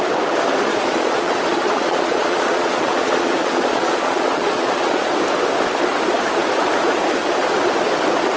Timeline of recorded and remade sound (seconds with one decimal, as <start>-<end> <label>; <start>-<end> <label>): 0.0-0.7 recorded; 0.7-5.1 remade; 5.1-8.4 recorded